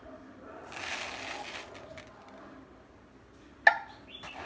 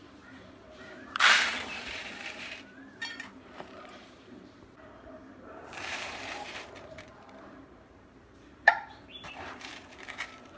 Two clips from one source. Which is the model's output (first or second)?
second